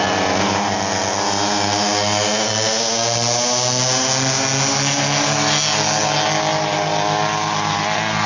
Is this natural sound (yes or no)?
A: yes